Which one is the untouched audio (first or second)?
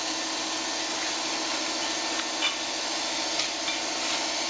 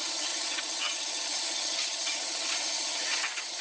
first